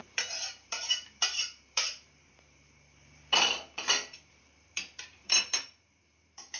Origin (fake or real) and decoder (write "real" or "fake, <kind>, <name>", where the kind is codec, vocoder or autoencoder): fake, vocoder, BigVGAN v2